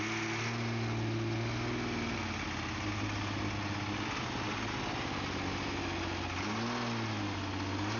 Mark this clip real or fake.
real